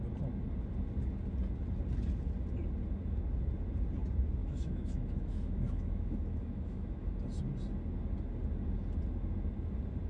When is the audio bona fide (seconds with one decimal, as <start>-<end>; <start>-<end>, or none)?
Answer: 0.0-4.4; 7.1-10.1